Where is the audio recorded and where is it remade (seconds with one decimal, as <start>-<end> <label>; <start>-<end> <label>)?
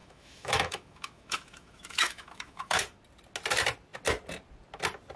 0.0-2.8 remade; 2.8-5.2 recorded